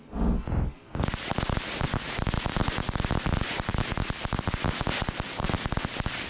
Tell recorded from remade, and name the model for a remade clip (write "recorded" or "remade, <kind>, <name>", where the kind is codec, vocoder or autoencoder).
recorded